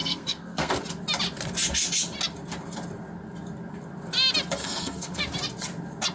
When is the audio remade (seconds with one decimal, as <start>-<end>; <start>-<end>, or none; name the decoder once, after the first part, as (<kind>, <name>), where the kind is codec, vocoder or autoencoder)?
0.0-0.7 (codec, SNAC); 4.6-5.2